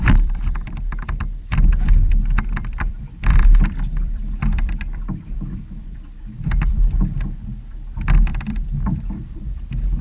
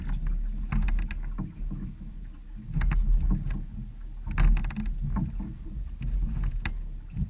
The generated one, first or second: first